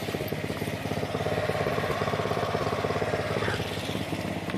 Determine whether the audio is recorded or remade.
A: recorded